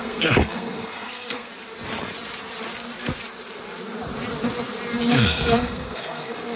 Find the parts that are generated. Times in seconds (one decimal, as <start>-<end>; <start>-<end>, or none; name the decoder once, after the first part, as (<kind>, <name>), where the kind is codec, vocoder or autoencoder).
0.0-1.5 (codec, SNAC); 5.1-6.6